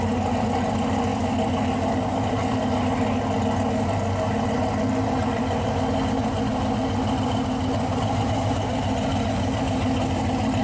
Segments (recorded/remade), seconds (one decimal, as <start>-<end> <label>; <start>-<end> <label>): 0.0-10.6 recorded